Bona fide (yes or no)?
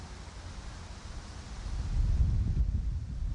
yes